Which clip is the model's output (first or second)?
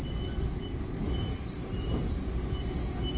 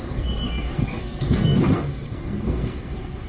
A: second